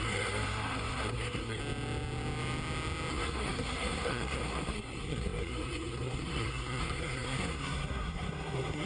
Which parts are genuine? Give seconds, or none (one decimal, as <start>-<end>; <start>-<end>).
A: 1.6-3.1